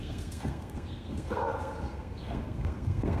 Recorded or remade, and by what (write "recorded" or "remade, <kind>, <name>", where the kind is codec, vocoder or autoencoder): remade, codec, SNAC